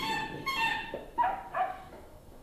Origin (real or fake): fake